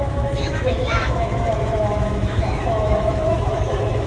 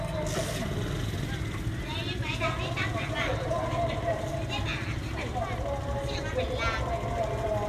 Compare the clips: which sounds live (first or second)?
second